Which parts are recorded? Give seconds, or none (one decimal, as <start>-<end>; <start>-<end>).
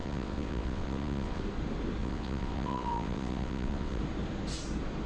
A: 1.4-2.0; 4.0-5.1